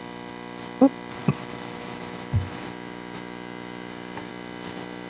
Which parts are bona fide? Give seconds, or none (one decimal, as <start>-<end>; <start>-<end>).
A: 0.0-1.2; 4.3-5.1